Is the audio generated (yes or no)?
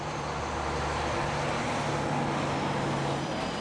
no